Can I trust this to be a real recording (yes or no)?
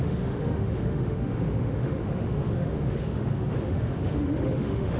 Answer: no